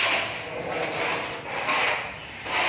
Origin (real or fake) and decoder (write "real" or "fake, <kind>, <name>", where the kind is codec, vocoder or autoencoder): real